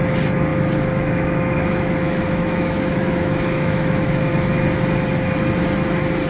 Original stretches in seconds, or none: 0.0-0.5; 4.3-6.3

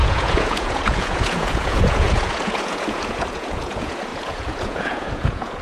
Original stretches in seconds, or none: none

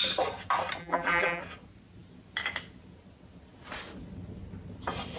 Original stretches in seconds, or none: 0.0-0.8; 1.4-5.2

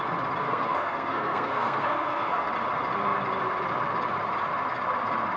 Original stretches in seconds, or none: 0.0-0.4; 2.5-5.4